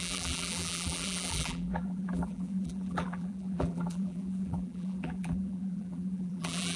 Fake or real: fake